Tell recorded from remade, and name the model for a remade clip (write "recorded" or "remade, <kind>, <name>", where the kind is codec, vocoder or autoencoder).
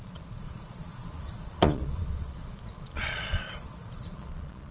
remade, vocoder, Vocos